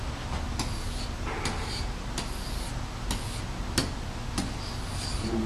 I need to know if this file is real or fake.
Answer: real